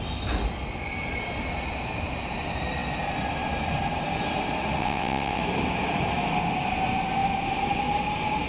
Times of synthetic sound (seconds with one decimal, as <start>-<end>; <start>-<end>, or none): 4.8-5.4